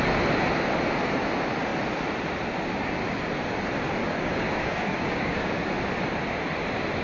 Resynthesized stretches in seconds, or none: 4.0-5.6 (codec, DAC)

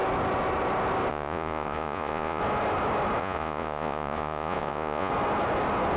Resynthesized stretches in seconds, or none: 1.1-2.4 (vocoder, Vocos); 3.2-5.1

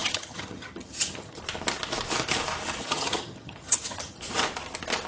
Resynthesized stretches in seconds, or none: 0.0-1.4 (vocoder, HiFi-GAN); 2.8-4.2

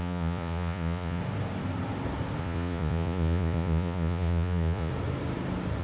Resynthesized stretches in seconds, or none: 0.0-1.2 (vocoder, Vocos); 2.4-4.9

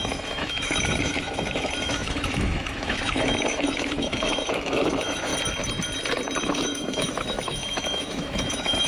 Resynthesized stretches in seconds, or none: 0.0-5.3 (autoencoder, DAC-VAE); 6.4-8.9

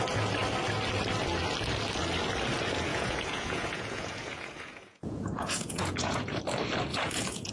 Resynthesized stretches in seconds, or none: 2.9-6.4 (vocoder, Vocos); 6.9-7.5

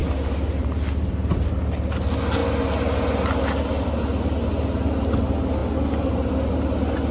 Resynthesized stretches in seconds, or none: none